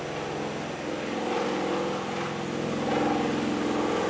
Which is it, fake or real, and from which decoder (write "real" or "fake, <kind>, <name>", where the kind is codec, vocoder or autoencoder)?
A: real